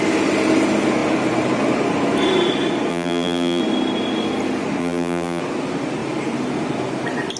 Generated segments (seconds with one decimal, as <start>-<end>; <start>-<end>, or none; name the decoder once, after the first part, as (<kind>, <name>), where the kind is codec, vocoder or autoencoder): 2.9-3.6 (vocoder, BigVGAN v2); 4.8-5.4